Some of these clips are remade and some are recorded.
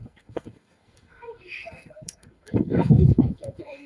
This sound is remade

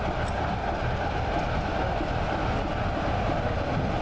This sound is recorded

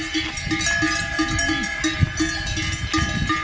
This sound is recorded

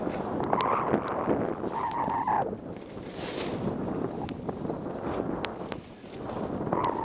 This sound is recorded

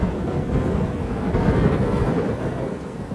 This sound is remade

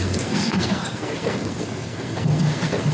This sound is remade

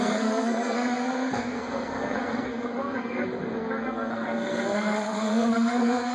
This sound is remade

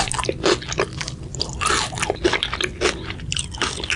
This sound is recorded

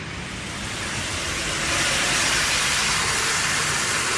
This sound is recorded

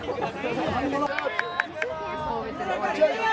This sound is recorded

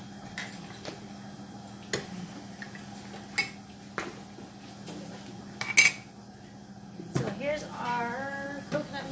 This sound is recorded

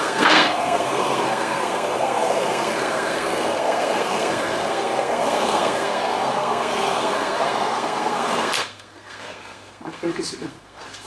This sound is remade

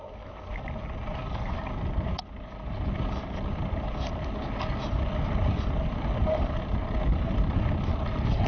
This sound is recorded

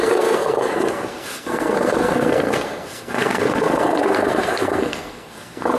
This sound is remade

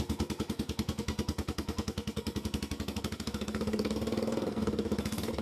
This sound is remade